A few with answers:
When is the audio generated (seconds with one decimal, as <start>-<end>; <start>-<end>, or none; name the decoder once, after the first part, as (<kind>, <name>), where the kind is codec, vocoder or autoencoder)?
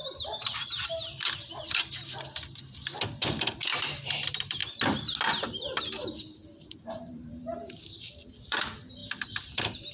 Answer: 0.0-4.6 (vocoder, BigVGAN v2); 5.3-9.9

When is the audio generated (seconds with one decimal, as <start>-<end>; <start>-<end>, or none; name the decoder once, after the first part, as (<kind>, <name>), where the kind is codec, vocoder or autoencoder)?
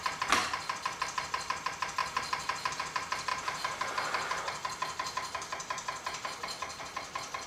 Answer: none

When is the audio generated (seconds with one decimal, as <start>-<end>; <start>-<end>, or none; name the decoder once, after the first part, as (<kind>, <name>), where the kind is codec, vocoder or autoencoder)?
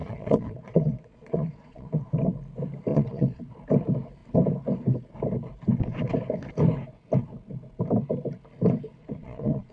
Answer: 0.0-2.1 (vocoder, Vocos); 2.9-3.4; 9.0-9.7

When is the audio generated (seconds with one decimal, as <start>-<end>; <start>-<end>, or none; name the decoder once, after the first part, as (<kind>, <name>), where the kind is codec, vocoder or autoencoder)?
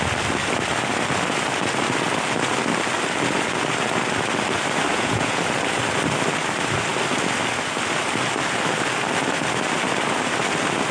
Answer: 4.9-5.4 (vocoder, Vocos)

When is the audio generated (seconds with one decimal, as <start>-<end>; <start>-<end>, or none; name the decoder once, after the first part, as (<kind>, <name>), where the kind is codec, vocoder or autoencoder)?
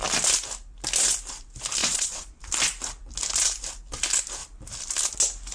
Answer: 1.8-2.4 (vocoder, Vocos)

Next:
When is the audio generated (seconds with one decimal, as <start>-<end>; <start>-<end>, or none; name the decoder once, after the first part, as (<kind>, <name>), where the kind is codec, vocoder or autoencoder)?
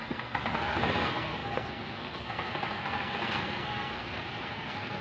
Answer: 0.0-5.0 (codec, SNAC)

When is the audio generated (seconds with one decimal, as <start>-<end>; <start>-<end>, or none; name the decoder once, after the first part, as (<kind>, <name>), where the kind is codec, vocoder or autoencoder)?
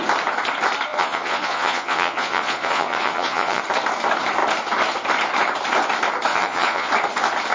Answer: 0.9-3.6 (vocoder, Vocos); 6.3-6.9